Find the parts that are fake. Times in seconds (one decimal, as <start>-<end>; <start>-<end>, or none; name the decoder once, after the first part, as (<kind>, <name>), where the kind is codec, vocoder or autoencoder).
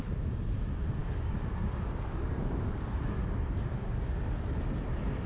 1.0-4.2 (codec, DAC)